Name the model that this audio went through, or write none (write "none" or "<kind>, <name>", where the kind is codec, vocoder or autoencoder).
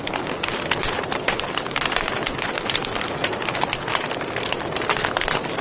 none